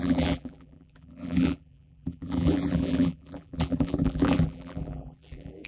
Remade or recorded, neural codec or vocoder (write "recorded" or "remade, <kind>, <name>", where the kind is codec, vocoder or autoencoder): remade, vocoder, BigVGAN v2